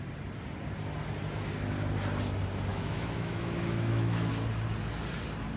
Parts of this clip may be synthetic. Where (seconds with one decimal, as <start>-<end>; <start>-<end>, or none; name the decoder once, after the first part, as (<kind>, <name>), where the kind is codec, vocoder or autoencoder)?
2.7-4.3 (autoencoder, DAC-VAE)